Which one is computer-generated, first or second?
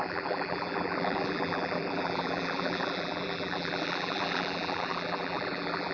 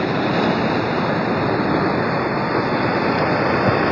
first